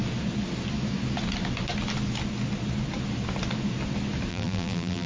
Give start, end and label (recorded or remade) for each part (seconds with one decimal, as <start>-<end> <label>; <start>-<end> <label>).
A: 0.0-4.3 recorded; 4.3-5.1 remade